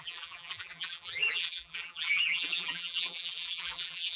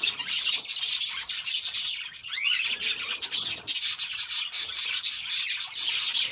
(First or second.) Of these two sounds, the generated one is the first